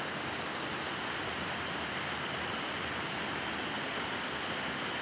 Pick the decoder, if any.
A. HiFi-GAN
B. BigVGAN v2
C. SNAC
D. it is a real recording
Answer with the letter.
D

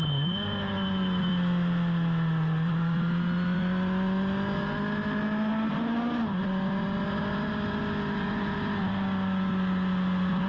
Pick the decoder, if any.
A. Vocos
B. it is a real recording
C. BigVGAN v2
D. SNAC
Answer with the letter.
B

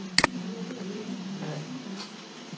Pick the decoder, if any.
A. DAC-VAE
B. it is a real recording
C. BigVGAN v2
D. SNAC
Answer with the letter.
B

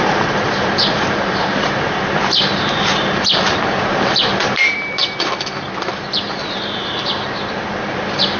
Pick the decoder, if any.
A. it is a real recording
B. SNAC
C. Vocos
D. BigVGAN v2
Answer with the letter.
D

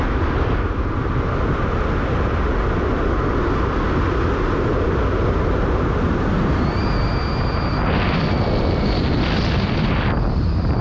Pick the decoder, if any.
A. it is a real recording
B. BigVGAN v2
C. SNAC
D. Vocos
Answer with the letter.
A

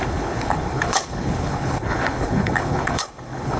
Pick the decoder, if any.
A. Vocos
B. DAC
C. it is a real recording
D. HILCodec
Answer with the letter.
D